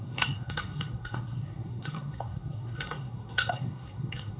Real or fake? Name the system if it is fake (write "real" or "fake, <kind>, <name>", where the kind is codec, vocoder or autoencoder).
fake, codec, SNAC